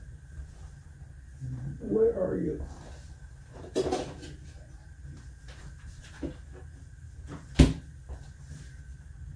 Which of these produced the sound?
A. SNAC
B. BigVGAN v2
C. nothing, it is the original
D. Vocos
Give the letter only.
C